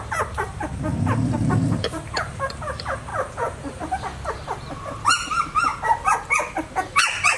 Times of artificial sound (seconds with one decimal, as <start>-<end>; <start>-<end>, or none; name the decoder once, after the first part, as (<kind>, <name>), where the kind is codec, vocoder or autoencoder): 0.0-0.9 (vocoder, BigVGAN v2); 1.5-3.1; 3.7-5.7; 6.5-7.4